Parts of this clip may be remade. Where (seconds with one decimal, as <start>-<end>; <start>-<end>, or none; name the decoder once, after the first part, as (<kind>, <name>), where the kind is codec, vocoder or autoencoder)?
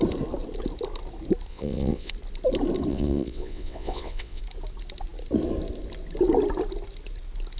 1.5-2.1 (vocoder, WaveNeXt); 2.9-4.4